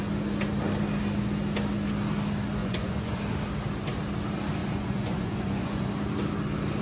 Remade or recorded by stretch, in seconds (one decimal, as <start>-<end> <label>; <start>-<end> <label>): 0.0-2.6 recorded; 2.6-3.2 remade; 3.2-4.6 recorded; 4.6-5.9 remade; 5.9-6.8 recorded